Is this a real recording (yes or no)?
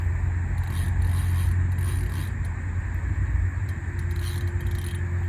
yes